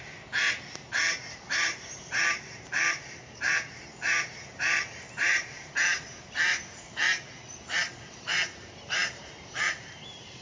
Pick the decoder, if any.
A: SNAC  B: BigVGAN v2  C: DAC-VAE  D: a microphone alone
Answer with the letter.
B